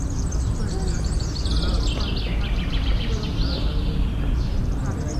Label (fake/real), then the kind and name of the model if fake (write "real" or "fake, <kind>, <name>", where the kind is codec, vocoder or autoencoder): real